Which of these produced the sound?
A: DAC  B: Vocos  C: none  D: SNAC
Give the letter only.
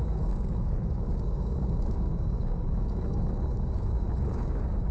A